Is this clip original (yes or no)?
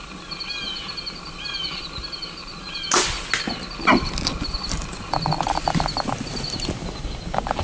yes